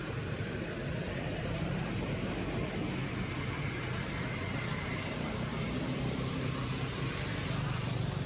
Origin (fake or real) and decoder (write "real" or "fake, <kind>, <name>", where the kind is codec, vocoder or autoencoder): fake, vocoder, BigVGAN v2